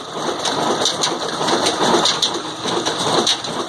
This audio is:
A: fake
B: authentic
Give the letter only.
B